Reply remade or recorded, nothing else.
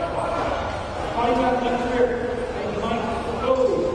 recorded